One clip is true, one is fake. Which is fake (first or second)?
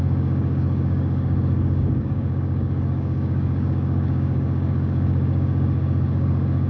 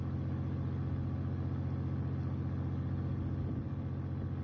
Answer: first